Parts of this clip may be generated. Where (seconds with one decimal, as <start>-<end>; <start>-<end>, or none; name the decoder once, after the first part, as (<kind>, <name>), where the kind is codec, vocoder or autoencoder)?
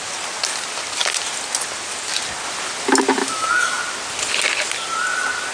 3.2-3.8 (codec, DAC)